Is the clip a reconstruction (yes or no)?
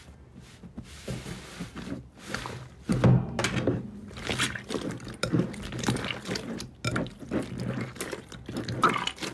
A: no